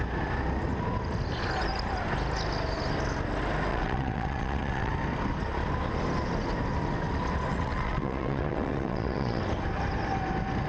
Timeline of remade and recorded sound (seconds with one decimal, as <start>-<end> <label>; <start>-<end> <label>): 0.0-3.7 recorded; 3.7-4.9 remade; 4.9-7.5 recorded; 7.5-9.4 remade; 9.4-10.7 recorded